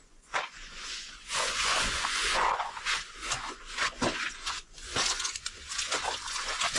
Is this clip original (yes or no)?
no